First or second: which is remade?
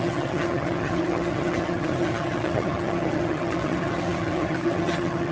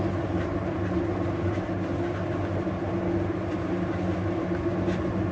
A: first